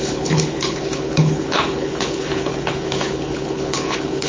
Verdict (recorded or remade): remade